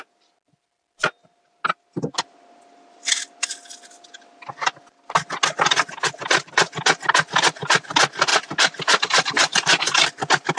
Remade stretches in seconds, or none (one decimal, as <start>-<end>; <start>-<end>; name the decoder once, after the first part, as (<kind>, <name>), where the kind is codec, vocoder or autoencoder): 8.3-9.0 (vocoder, BigVGAN v2)